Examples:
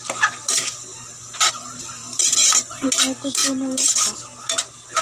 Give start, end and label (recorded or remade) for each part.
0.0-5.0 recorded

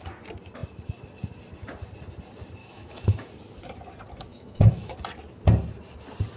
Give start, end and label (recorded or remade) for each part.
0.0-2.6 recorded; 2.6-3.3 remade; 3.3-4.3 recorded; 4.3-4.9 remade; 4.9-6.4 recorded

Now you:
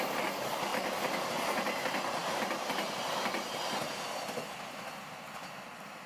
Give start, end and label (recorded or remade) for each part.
0.0-6.1 recorded

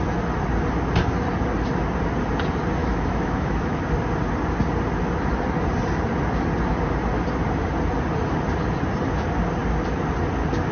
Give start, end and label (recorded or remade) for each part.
0.0-2.8 recorded; 2.8-3.8 remade; 3.8-10.7 recorded

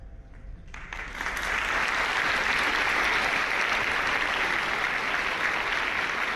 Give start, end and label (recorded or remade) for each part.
0.0-6.4 recorded

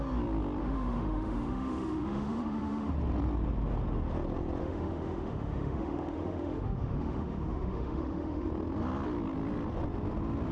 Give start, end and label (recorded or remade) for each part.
0.0-0.6 recorded; 0.6-2.9 remade; 2.9-4.6 recorded; 4.6-8.5 remade; 8.5-10.5 recorded